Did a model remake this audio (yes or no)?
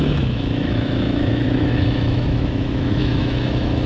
yes